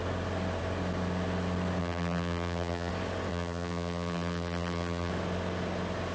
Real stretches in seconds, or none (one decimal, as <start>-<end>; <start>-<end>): 0.0-1.8; 2.9-3.3; 5.1-6.1